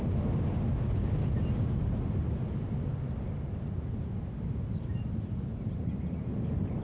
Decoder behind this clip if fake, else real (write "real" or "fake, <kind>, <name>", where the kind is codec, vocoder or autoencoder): real